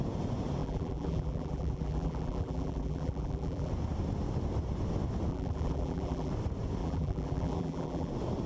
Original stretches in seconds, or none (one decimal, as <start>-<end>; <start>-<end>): 0.0-0.6; 3.7-5.3; 6.3-6.8; 8.1-8.5